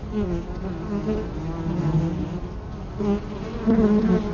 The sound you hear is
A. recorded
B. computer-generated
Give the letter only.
A